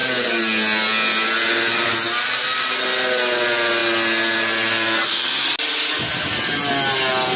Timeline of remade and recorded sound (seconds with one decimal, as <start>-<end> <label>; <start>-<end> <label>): 0.0-7.4 recorded